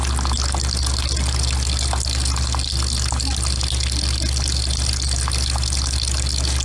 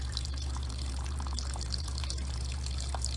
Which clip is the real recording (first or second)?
first